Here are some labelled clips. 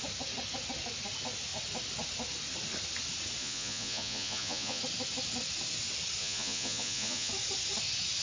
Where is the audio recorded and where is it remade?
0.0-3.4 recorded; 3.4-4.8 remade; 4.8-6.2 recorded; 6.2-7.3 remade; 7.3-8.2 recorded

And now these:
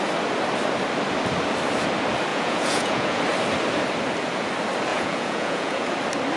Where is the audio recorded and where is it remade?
0.0-2.3 recorded; 2.3-3.2 remade; 3.2-4.9 recorded; 4.9-5.9 remade; 5.9-6.4 recorded

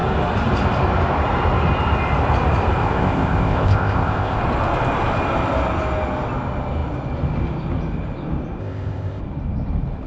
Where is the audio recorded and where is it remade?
0.0-2.8 recorded; 2.8-4.4 remade; 4.4-8.6 recorded; 8.6-9.2 remade; 9.2-10.1 recorded

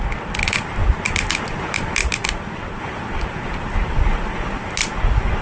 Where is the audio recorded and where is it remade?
0.0-5.4 recorded